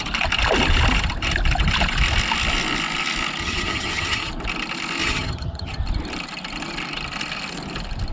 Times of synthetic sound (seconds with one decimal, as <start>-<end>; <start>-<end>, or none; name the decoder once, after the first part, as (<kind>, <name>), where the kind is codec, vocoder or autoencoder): 3.4-4.3 (vocoder, HiFi-GAN); 5.0-5.8